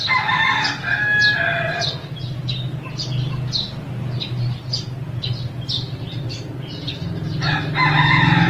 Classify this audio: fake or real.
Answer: real